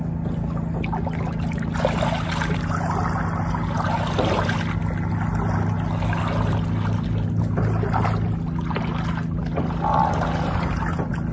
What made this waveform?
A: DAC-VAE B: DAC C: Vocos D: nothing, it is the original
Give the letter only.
D